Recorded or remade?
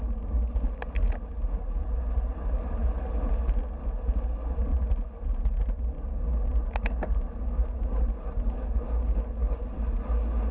recorded